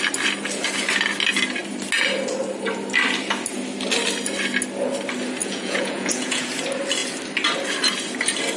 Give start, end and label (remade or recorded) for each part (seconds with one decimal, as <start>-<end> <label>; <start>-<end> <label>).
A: 0.0-5.4 recorded; 5.4-6.5 remade; 6.5-8.6 recorded